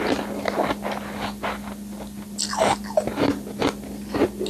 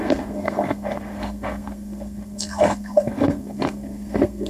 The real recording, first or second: first